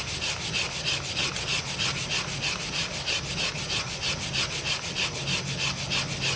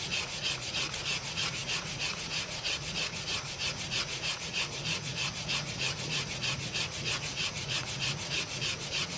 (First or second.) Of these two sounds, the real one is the first